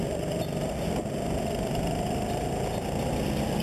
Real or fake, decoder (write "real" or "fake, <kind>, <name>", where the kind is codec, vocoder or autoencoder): real